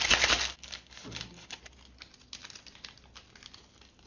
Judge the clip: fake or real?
real